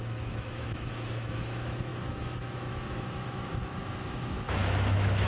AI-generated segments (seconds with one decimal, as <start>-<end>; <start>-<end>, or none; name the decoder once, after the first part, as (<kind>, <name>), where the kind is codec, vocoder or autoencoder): 0.0-5.3 (autoencoder, DAC-VAE)